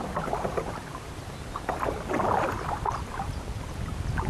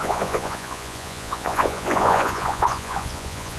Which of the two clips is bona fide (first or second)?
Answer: first